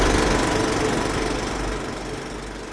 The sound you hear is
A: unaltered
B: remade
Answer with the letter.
A